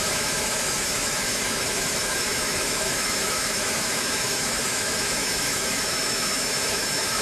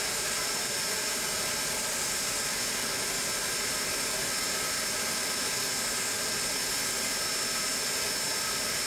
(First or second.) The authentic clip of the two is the second